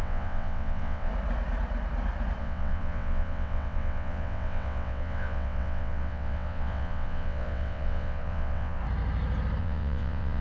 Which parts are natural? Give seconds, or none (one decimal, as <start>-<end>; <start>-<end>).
1.1-2.4; 8.8-9.6